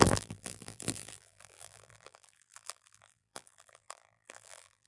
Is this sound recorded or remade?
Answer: remade